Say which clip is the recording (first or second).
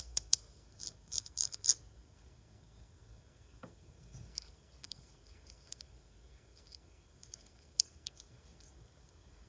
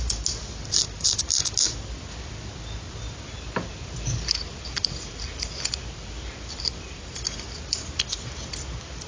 second